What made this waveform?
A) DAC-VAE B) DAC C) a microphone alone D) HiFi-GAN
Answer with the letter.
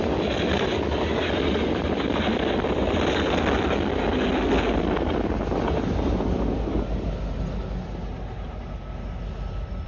C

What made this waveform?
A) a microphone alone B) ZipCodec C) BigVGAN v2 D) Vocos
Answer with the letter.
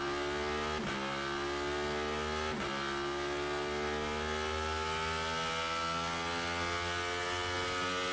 A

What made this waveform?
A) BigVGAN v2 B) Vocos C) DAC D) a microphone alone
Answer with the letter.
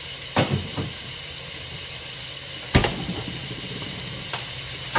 A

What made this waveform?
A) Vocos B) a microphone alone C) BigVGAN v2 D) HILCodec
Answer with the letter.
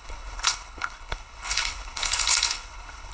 D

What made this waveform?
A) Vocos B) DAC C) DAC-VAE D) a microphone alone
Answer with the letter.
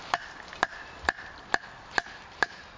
D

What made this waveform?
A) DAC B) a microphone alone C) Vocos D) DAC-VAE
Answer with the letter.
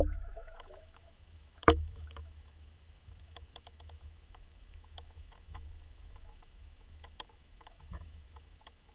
D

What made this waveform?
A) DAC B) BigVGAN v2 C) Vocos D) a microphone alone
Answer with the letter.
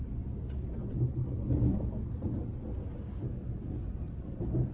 D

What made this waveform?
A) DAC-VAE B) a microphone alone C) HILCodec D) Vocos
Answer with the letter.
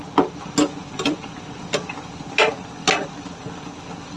B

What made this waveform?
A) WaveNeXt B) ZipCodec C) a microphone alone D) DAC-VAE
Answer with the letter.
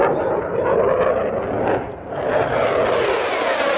C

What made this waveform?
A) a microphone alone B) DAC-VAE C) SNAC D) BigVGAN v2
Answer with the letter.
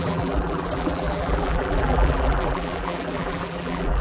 D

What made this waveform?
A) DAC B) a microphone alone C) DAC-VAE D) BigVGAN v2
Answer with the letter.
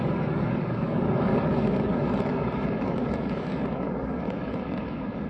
A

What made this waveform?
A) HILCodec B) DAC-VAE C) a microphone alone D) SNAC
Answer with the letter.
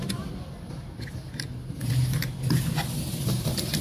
C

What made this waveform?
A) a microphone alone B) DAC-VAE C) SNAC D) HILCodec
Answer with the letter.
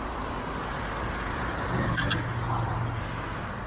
A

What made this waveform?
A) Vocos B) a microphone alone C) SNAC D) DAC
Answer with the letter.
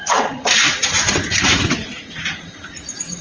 A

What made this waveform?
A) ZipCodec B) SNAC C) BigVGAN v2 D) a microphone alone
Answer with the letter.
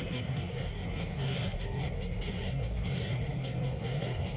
B